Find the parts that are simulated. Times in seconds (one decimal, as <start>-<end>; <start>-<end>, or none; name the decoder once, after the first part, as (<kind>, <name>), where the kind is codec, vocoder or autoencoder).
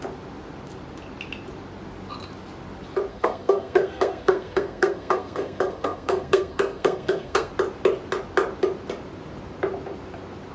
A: 3.1-7.5 (codec, SNAC)